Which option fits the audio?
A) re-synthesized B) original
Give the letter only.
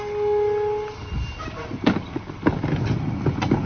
B